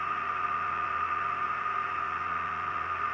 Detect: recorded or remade remade